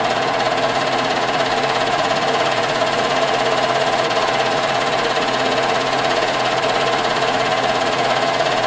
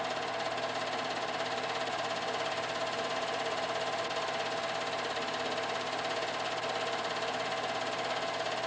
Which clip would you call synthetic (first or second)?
first